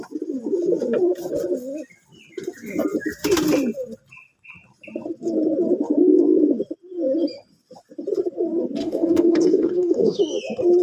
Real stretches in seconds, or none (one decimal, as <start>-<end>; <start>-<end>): 0.0-8.8; 10.2-10.8

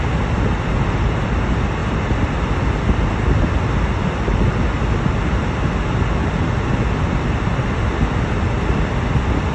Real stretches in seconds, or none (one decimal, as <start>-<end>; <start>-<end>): 0.0-9.5

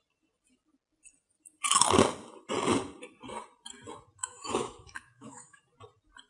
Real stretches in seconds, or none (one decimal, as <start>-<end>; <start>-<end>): 0.0-4.2; 5.6-6.3

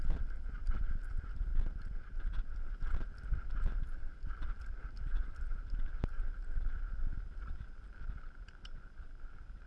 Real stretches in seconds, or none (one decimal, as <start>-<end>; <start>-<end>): 1.5-2.6

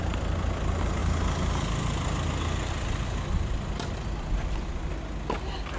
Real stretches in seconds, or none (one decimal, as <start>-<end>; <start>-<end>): 0.0-5.8

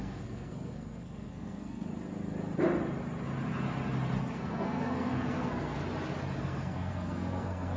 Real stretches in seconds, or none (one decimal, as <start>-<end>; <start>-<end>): 1.9-4.2; 5.8-6.4

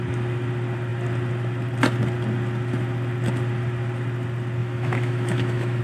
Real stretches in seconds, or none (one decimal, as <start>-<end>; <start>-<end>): 0.0-4.6